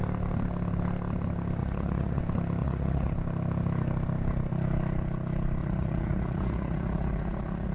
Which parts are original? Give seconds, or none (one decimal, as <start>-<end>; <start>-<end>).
0.0-1.6; 2.2-2.6; 3.1-5.6